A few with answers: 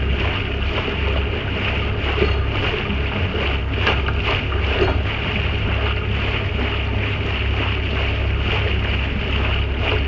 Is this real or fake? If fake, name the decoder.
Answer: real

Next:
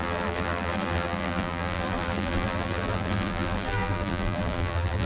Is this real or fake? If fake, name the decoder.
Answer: fake, vocoder, BigVGAN v2